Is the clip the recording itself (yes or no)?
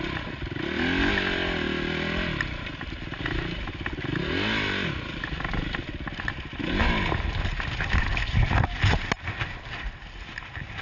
yes